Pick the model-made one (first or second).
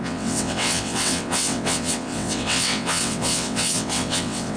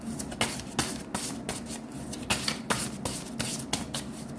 first